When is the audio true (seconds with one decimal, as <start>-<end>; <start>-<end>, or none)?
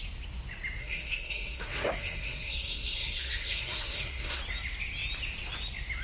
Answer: 0.0-0.8; 4.4-6.0